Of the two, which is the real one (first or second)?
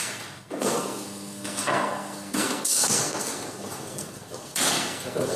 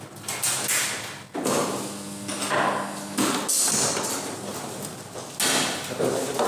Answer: second